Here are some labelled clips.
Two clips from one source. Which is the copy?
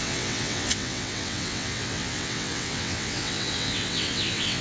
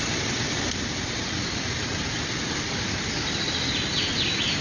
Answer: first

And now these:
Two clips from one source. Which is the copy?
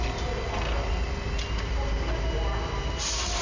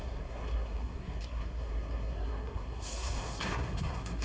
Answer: second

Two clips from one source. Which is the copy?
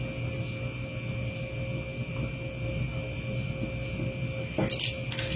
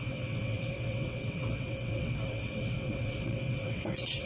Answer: second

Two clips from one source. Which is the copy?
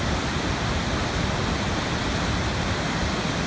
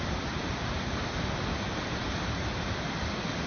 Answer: second